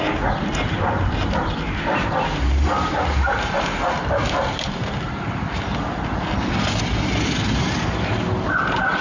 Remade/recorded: recorded